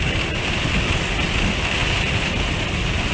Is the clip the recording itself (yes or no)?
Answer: yes